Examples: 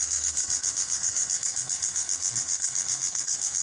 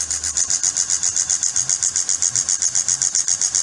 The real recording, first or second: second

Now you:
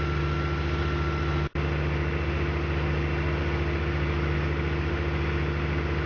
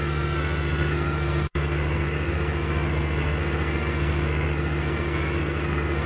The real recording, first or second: first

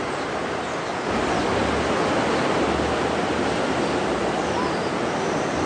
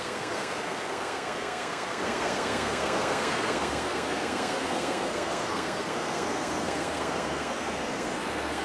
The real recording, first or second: first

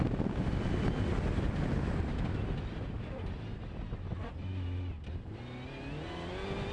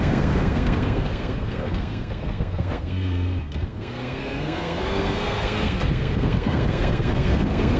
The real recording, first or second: first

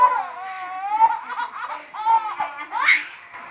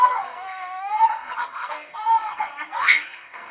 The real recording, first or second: first